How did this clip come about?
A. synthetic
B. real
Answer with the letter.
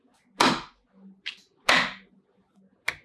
B